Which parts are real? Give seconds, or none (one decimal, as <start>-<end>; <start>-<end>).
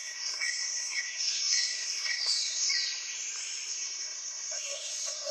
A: 2.7-3.7